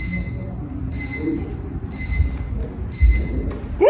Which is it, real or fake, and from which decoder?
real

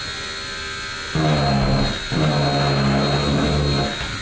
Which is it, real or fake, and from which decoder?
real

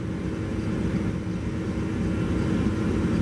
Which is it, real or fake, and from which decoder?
real